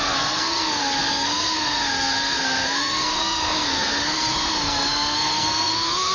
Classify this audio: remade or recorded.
remade